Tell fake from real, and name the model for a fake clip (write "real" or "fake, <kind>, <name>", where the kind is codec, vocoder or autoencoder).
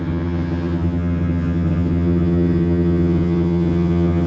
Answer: fake, vocoder, HiFi-GAN